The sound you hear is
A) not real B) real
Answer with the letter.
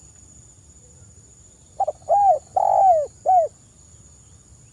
B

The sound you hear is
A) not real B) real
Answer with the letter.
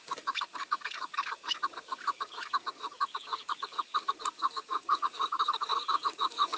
A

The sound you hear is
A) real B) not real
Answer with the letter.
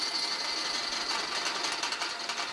A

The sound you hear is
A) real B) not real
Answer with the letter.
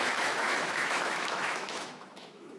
B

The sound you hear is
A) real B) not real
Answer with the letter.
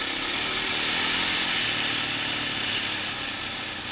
A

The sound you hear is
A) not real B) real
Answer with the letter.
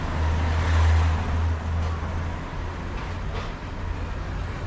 B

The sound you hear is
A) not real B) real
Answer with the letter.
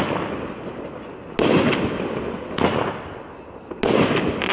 B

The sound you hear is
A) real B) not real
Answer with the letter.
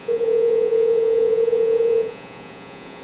B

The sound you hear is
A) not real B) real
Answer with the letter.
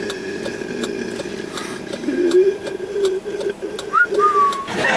B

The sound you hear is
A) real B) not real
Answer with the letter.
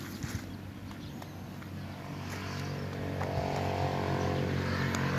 A